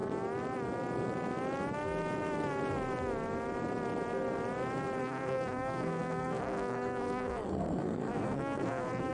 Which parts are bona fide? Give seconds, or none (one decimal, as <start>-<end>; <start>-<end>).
0.0-5.0